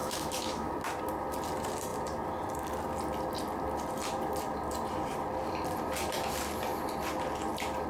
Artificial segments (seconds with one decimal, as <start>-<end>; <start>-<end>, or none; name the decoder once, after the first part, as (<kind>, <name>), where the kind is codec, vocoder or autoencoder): 0.0-0.7 (autoencoder, DAC-VAE)